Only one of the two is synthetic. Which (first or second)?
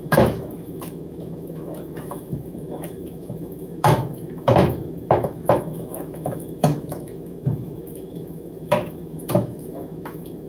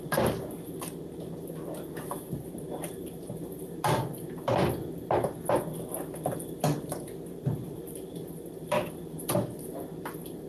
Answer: first